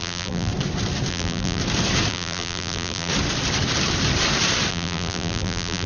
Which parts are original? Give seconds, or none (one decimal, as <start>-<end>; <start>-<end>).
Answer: 0.5-1.1; 1.6-2.1; 3.1-4.7

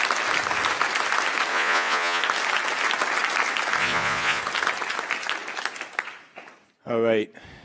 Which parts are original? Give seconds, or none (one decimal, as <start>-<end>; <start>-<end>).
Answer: 0.0-1.5; 2.2-3.8; 4.4-7.6

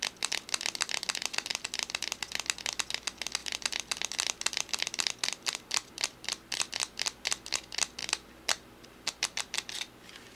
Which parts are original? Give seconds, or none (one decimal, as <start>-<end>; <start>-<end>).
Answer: 0.0-1.5; 2.2-3.4; 6.7-8.0

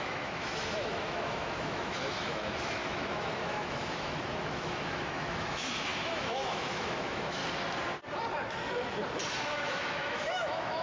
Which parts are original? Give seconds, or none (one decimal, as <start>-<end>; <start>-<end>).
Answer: 7.4-9.4

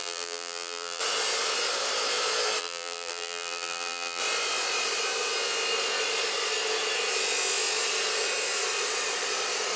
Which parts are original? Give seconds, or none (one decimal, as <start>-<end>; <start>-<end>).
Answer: 1.0-2.6; 4.2-9.8

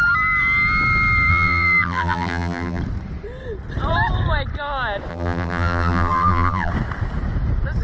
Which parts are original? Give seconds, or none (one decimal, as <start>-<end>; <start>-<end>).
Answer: 0.0-1.3; 2.8-5.1; 6.7-7.8